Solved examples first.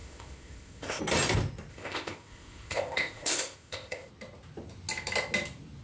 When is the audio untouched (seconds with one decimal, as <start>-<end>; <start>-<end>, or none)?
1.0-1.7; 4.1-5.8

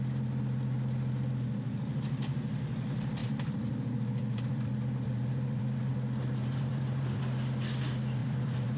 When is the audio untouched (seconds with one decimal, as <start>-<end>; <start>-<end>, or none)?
0.0-3.2; 5.9-6.4; 7.2-8.2

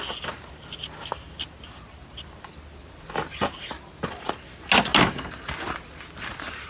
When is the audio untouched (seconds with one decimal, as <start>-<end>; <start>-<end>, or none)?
0.0-6.7